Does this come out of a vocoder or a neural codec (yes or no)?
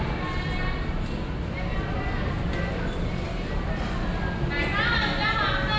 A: no